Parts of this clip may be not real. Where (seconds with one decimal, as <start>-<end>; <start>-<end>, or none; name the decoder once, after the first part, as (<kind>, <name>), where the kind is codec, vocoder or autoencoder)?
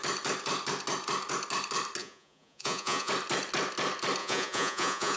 2.0-3.1 (vocoder, Vocos); 4.2-5.2